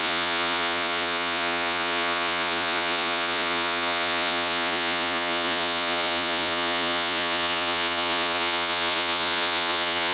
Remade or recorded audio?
remade